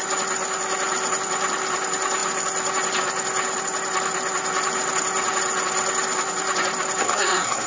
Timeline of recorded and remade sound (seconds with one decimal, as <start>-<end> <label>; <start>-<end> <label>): 0.0-7.0 recorded; 7.0-7.7 remade